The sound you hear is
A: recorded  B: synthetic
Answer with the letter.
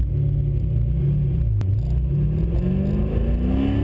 A